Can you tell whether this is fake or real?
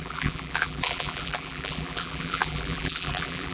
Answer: fake